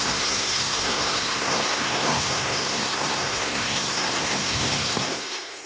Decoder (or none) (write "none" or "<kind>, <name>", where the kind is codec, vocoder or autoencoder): codec, SNAC